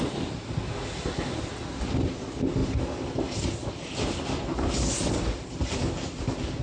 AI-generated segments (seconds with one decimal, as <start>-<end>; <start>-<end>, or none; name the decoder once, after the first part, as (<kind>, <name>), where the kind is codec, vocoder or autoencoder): none